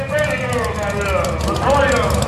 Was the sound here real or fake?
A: real